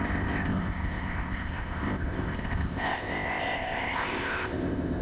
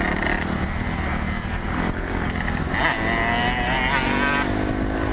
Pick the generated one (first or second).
first